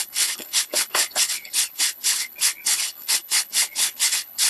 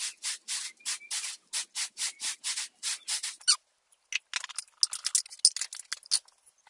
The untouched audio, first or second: second